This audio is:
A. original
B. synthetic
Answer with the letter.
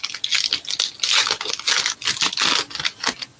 A